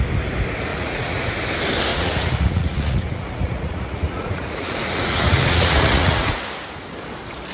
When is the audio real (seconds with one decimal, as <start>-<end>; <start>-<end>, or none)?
0.0-0.7; 1.3-1.9; 6.4-7.5